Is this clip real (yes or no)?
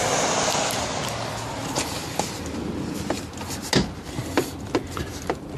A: yes